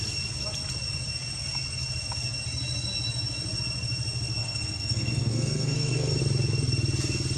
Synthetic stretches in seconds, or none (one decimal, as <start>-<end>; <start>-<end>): 4.4-6.2